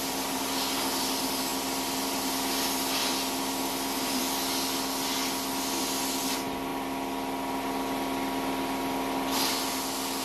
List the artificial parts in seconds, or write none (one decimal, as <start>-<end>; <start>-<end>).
none